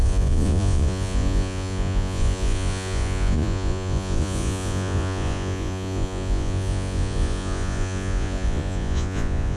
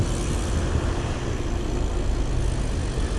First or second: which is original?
second